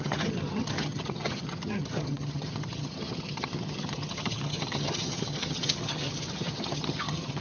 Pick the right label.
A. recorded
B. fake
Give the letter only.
B